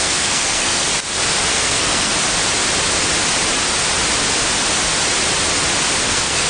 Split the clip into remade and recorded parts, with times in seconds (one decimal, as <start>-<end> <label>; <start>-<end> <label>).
0.0-0.9 remade; 0.9-1.5 recorded; 1.5-2.1 remade; 2.1-6.0 recorded; 6.0-6.5 remade